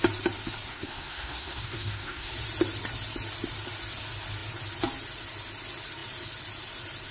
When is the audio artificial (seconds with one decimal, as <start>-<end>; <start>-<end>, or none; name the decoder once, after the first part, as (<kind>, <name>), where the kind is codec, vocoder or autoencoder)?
0.7-2.3 (codec, SNAC)